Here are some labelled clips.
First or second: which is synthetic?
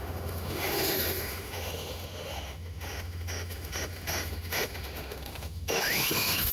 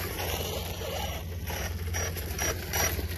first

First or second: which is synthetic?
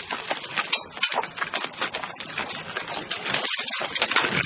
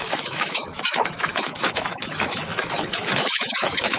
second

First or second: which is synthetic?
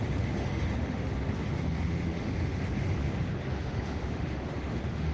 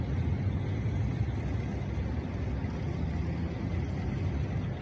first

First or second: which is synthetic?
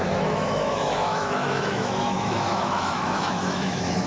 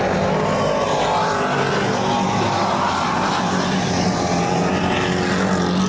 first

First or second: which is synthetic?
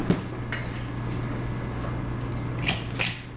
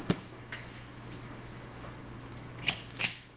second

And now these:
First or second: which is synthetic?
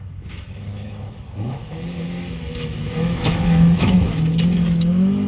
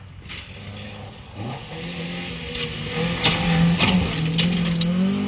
first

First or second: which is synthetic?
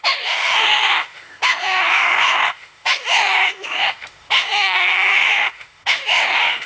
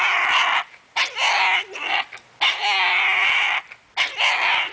first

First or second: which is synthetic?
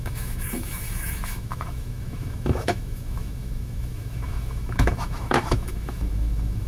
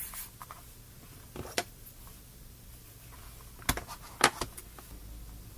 first